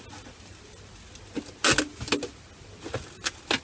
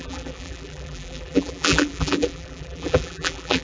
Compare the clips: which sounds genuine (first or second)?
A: first